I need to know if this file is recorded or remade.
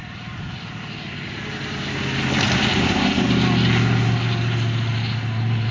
recorded